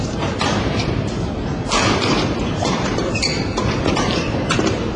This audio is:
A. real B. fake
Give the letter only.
B